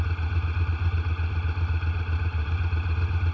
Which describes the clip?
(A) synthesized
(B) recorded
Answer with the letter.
B